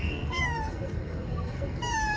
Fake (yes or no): yes